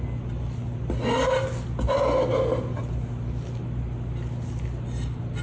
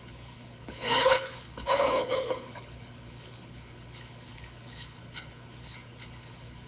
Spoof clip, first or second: second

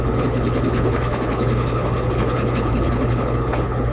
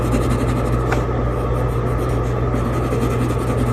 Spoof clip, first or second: first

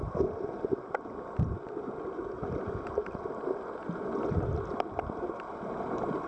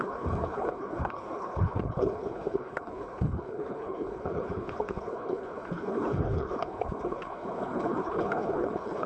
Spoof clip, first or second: second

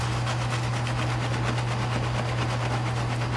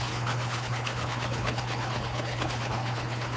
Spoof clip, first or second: second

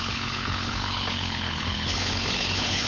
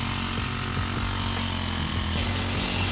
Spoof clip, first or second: first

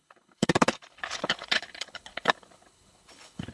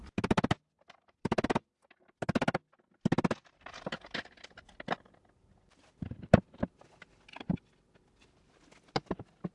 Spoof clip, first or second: first